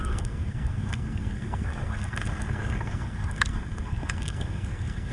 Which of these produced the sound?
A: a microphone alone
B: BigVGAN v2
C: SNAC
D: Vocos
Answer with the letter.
C